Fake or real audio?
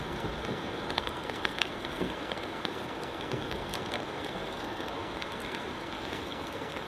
fake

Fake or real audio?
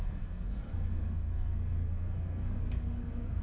fake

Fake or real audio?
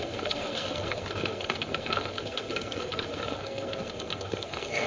fake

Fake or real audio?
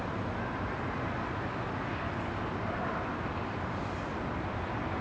real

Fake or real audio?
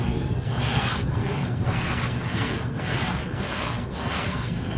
fake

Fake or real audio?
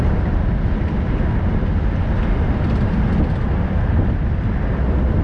real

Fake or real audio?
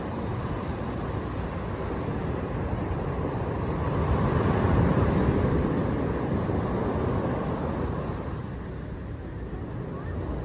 real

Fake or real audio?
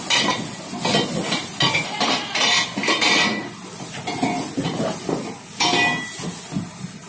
real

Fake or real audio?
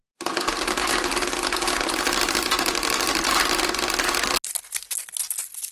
real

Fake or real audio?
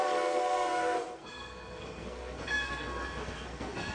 fake